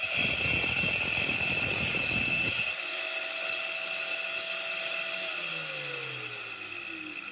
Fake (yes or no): no